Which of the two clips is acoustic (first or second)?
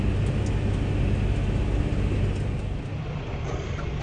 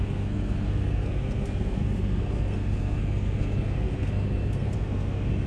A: first